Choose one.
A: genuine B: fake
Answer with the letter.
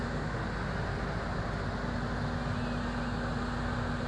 A